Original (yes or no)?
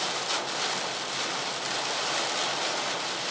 yes